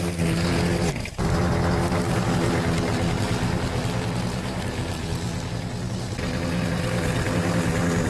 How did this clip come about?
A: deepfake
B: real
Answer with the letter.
B